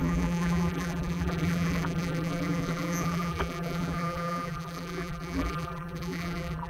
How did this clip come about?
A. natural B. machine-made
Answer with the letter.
B